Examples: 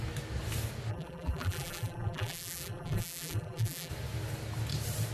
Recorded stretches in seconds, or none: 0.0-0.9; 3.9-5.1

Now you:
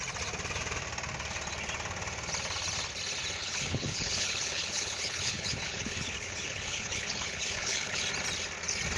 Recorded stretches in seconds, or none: 0.0-3.4; 8.0-9.0

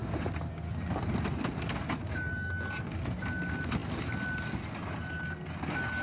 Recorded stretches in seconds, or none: 0.0-6.0

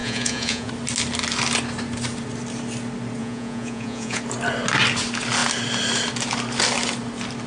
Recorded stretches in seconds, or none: 0.7-3.2; 4.2-7.5

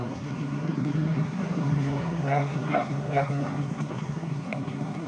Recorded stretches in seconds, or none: none

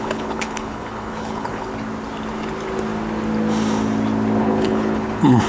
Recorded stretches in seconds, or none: 1.7-4.4

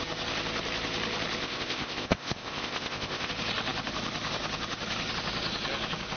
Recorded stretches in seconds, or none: 0.0-1.4; 3.3-6.2